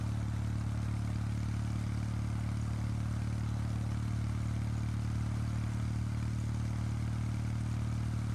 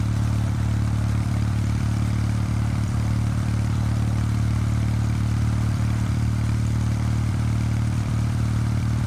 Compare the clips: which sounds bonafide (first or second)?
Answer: first